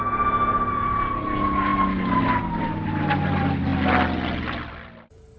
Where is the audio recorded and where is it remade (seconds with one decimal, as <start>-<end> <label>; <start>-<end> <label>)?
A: 0.0-5.4 recorded

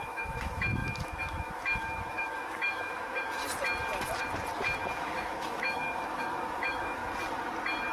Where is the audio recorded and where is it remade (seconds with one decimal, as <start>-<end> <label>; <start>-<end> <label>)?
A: 0.0-3.4 remade; 3.4-5.0 recorded; 5.0-7.0 remade; 7.0-7.9 recorded

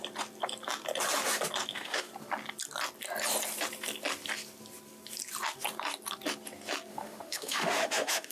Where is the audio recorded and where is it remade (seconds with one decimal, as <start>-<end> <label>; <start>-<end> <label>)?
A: 0.0-1.7 recorded; 1.7-2.1 remade; 2.1-6.9 recorded; 6.9-8.3 remade

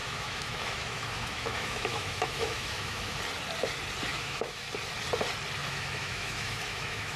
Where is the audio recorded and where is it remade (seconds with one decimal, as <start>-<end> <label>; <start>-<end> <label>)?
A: 0.0-3.2 remade; 3.2-4.1 recorded; 4.1-4.7 remade; 4.7-5.6 recorded; 5.6-7.2 remade